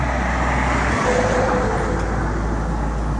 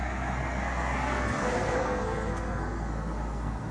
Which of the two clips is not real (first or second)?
second